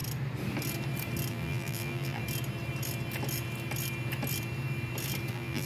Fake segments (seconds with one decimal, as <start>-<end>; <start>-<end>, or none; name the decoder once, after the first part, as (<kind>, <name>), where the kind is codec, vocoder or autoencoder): 1.3-2.2 (vocoder, BigVGAN v2); 5.3-5.7